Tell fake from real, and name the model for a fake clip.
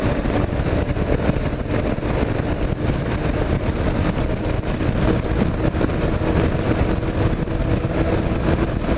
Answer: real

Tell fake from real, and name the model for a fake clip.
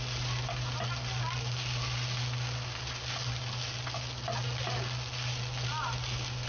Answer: real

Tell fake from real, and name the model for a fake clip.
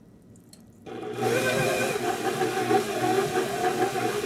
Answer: real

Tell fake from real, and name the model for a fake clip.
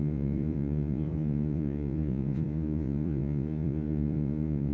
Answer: fake, vocoder, Vocos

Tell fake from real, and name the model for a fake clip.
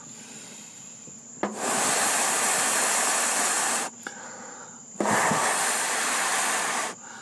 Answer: real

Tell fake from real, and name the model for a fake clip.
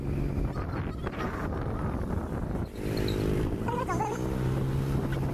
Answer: real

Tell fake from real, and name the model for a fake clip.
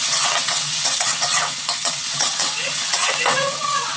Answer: fake, vocoder, WaveNeXt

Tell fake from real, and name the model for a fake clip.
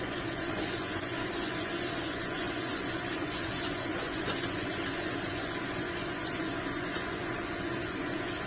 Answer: fake, vocoder, Vocos